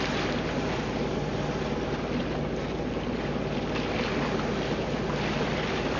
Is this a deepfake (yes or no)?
no